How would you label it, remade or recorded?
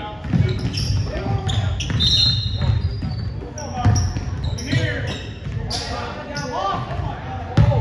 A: recorded